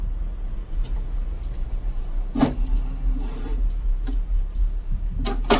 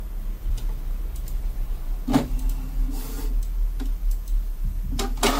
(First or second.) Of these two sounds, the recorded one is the second